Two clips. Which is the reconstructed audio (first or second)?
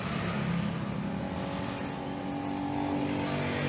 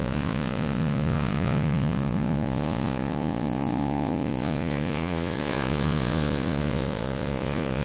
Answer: second